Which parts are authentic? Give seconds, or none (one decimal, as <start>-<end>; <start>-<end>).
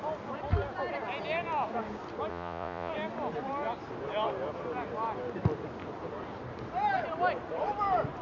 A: 0.0-2.3; 2.9-8.2